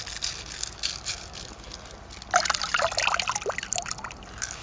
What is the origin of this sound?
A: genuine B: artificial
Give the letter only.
A